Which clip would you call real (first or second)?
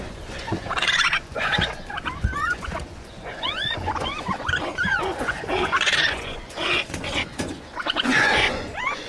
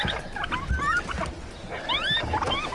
second